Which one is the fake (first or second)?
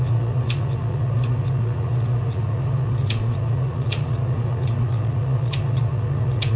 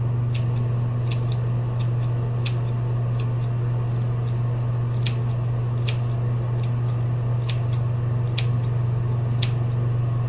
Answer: first